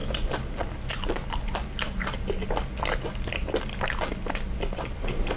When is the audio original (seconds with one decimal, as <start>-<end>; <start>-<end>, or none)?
0.0-5.4